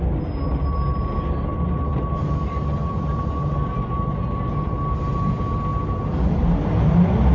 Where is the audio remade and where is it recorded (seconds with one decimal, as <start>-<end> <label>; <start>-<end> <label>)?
0.0-7.3 recorded